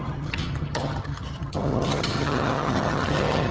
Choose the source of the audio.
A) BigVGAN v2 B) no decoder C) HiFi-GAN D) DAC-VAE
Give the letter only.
C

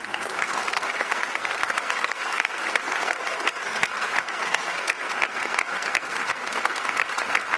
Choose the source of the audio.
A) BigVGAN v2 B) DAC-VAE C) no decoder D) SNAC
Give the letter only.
D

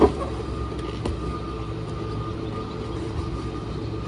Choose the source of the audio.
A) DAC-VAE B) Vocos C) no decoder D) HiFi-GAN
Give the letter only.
C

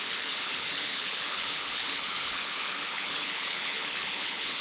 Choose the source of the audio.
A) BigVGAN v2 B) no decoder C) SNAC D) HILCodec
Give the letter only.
D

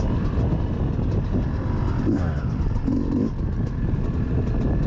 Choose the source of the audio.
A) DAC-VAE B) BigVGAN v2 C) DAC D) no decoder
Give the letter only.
D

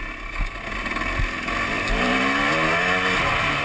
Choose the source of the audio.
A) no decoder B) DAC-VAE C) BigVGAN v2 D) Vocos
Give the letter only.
A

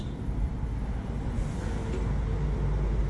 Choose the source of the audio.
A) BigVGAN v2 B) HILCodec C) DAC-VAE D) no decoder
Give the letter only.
D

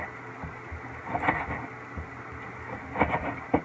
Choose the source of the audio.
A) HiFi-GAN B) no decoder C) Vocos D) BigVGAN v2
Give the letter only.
B